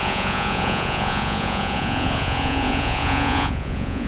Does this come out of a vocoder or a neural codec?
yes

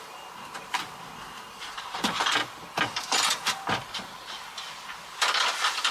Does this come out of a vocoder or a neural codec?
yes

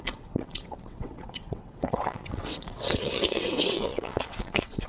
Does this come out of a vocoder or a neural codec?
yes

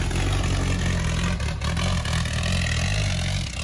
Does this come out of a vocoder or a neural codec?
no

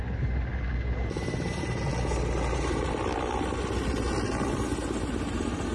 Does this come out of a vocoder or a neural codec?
no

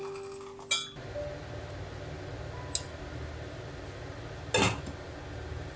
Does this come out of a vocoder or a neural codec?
no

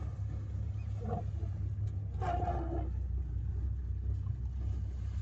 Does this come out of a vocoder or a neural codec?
no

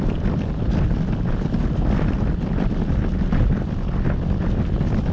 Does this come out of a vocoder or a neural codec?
no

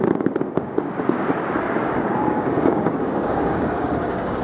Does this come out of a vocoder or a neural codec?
yes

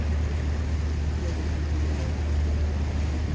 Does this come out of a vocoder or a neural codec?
no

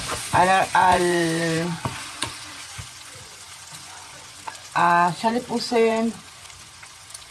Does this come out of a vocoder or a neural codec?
yes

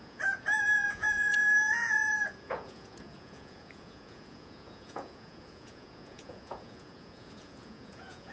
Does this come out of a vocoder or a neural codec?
yes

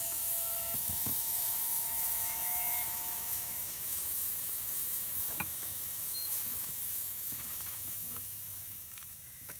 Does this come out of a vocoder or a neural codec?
yes